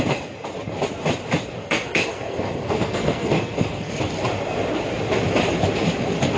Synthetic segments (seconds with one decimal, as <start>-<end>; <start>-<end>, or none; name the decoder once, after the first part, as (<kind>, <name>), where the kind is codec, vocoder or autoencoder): 1.6-4.0 (codec, SNAC)